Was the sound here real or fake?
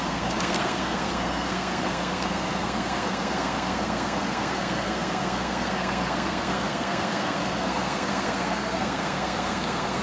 fake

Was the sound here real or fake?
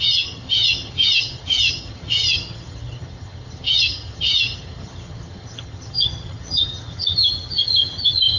fake